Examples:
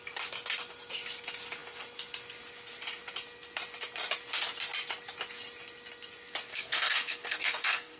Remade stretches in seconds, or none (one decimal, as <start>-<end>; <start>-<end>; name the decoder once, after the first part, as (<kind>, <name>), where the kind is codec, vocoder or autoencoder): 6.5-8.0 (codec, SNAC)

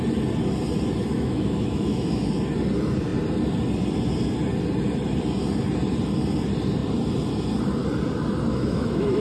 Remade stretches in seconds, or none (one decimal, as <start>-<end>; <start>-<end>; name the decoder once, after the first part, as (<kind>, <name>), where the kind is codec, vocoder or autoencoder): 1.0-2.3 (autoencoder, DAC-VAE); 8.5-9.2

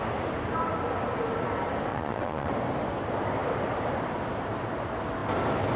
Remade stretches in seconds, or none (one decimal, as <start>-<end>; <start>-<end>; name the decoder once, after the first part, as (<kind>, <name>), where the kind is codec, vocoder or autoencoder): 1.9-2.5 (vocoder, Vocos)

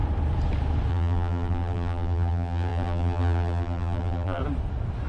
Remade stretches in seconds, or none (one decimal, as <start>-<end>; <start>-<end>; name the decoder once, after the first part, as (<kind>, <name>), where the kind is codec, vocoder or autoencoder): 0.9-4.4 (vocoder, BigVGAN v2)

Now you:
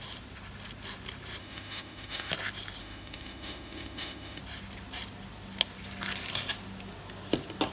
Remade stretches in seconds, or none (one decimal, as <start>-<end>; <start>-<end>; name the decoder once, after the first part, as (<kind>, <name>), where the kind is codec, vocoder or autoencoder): 1.4-2.3 (autoencoder, DAC-VAE); 2.8-4.4

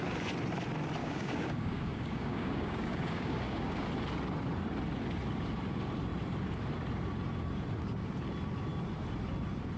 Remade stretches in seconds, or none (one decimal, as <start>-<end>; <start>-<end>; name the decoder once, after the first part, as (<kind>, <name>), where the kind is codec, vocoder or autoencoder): 1.0-3.9 (codec, DAC)